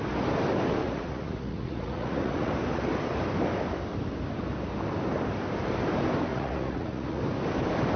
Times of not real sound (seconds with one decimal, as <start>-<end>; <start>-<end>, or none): 0.8-2.5; 6.3-7.2